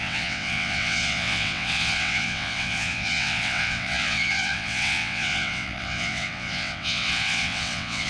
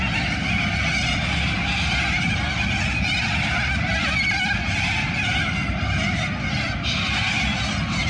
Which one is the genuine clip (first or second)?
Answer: second